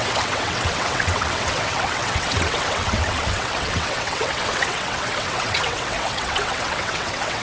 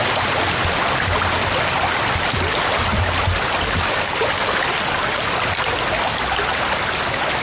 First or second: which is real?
second